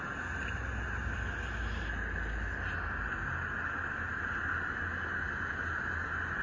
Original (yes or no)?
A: yes